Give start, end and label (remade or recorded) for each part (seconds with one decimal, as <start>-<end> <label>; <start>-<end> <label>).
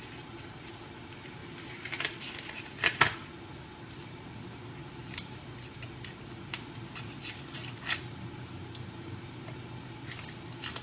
0.0-10.8 recorded